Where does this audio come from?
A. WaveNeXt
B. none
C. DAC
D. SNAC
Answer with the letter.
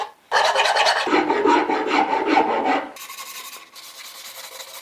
B